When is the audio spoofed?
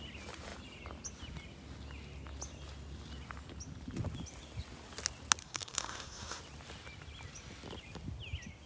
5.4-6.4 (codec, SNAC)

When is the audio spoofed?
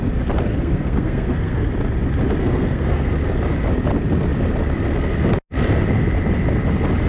0.5-1.7 (codec, SNAC); 2.4-3.1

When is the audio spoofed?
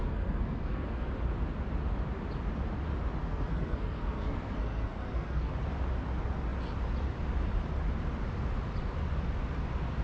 0.0-1.1 (codec, SNAC); 3.2-5.5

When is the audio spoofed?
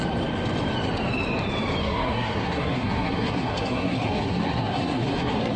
1.8-5.6 (codec, SNAC)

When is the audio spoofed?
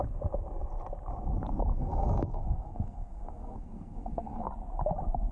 1.7-4.5 (codec, SNAC)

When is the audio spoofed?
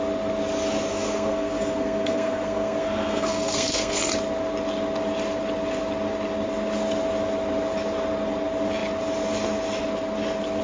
0.9-4.0 (codec, SNAC)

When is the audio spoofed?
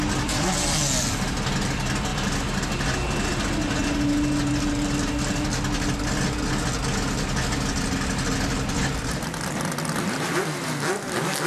none